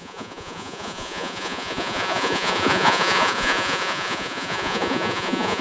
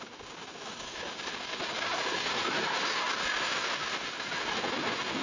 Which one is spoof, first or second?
first